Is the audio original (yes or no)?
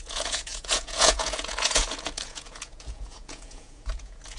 no